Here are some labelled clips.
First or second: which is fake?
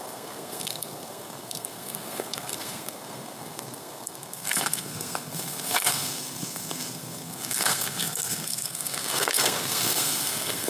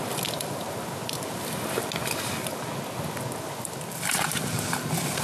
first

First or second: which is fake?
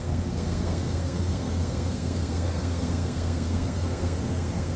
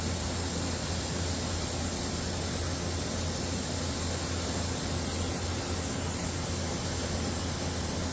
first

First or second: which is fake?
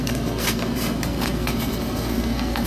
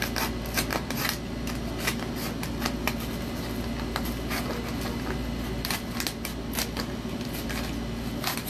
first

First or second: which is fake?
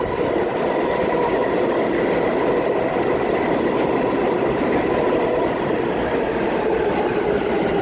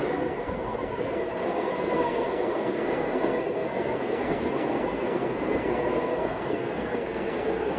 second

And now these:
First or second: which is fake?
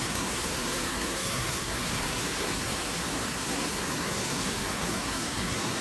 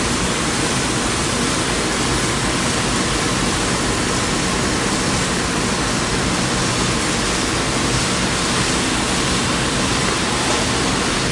first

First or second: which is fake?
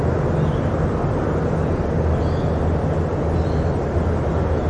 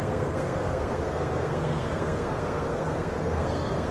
second